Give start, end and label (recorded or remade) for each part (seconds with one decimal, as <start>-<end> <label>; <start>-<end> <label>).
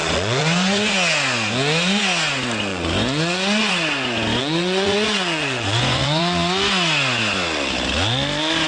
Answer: 0.0-0.9 remade; 0.9-2.7 recorded; 2.7-3.7 remade; 3.7-4.4 recorded; 4.4-6.2 remade; 6.2-8.7 recorded